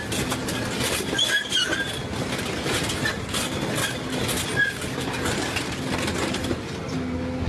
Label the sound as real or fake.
real